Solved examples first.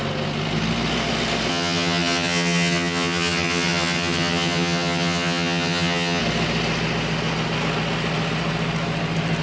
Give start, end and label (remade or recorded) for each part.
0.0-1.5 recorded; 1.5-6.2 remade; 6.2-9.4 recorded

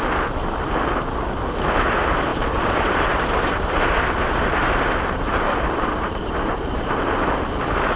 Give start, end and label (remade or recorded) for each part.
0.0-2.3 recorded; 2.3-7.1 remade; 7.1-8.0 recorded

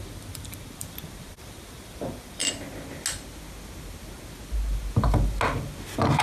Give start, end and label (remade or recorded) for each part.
0.0-2.4 remade; 2.4-6.2 recorded